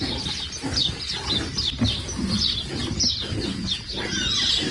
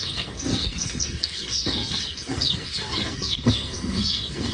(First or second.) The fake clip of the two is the second